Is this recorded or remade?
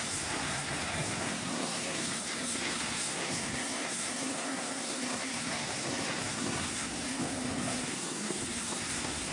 remade